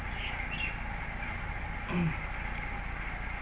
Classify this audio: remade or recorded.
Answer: recorded